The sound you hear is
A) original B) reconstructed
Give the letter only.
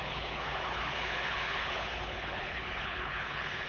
B